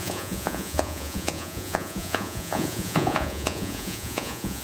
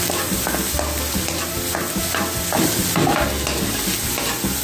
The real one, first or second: second